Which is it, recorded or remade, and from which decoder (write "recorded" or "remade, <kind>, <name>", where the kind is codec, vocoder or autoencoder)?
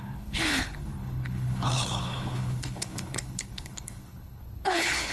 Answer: remade, codec, HILCodec